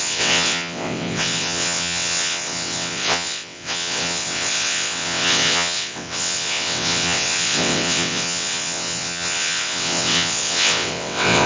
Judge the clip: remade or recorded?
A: remade